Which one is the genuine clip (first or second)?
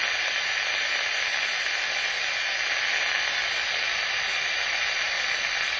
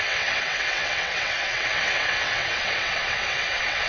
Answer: first